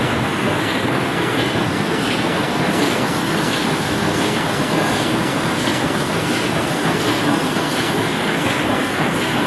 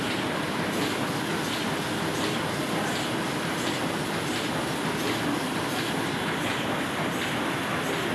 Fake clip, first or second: first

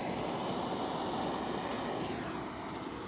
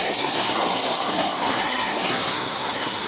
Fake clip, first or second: second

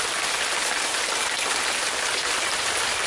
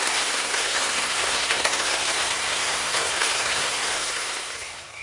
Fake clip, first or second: second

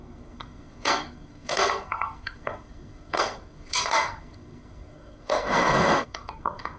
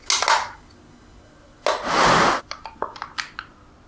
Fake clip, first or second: first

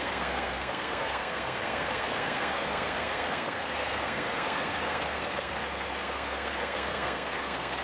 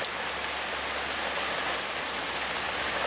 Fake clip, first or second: first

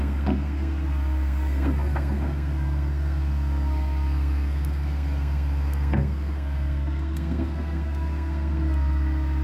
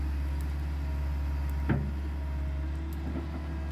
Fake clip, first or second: first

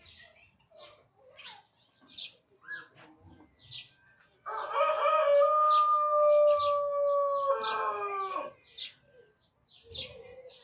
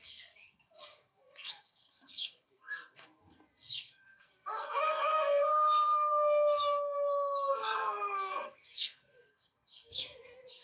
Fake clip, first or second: second